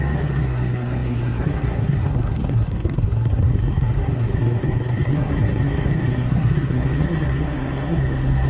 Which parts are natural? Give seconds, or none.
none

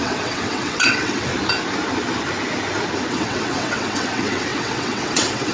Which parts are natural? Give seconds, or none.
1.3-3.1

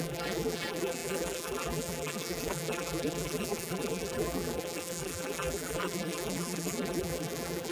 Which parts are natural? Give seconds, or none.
none

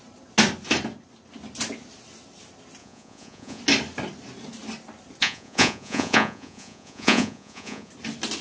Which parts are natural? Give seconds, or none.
0.0-2.8; 3.6-5.2; 7.9-8.4